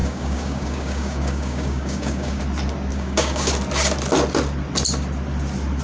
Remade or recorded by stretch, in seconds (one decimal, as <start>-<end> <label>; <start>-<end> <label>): 0.0-2.4 remade; 2.4-2.9 recorded; 2.9-3.5 remade; 3.5-5.8 recorded